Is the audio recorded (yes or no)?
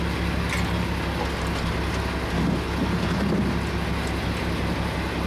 yes